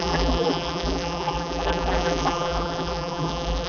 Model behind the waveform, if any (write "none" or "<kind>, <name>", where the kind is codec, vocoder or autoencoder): vocoder, BigVGAN v2